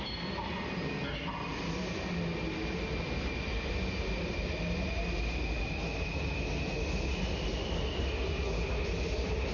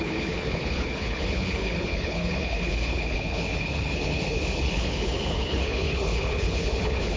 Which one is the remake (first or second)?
second